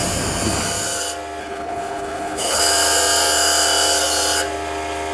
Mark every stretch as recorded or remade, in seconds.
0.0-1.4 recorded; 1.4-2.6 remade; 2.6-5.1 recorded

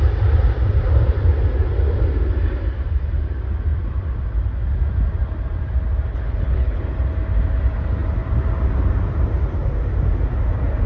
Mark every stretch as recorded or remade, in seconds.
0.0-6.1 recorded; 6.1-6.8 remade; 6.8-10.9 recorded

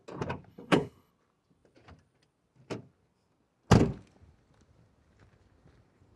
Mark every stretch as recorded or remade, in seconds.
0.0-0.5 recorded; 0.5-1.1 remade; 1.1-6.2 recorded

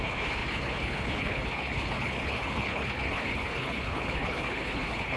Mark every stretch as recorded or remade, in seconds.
0.0-5.2 remade

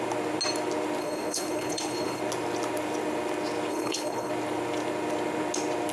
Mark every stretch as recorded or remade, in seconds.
0.0-1.0 recorded; 1.0-2.2 remade; 2.2-3.7 recorded; 3.7-4.3 remade; 4.3-5.9 recorded

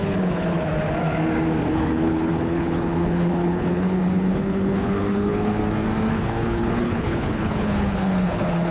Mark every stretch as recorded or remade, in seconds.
0.0-0.7 remade; 0.7-1.7 recorded; 1.7-5.6 remade; 5.6-6.1 recorded; 6.1-8.7 remade

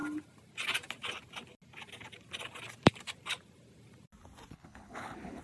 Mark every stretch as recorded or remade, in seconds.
0.0-4.5 recorded; 4.5-5.4 remade

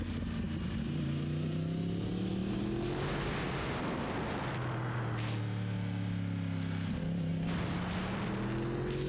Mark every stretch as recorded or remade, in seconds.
0.0-9.1 recorded